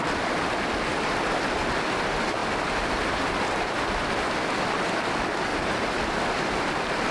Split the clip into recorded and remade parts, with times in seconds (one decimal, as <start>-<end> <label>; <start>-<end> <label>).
0.0-2.4 recorded; 2.4-4.1 remade; 4.1-5.5 recorded; 5.5-7.1 remade